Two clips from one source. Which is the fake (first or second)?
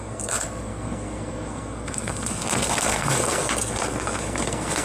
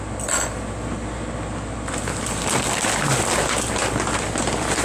first